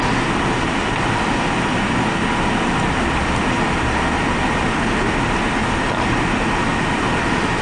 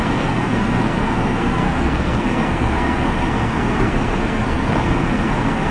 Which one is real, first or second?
first